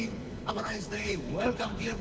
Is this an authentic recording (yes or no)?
no